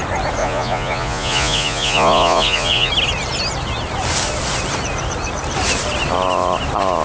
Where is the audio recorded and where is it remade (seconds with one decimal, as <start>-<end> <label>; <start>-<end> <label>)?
0.0-0.4 recorded; 0.4-2.9 remade; 2.9-7.0 recorded